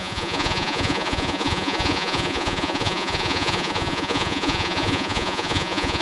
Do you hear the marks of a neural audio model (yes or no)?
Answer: yes